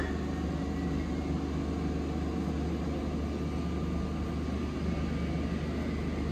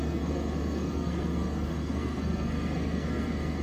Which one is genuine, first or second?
first